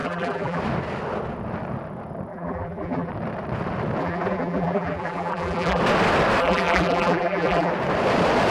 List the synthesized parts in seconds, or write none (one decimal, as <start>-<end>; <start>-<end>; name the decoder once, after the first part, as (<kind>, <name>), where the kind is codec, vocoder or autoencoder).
0.0-0.6 (vocoder, BigVGAN v2); 2.3-3.1; 4.0-5.8; 6.4-7.7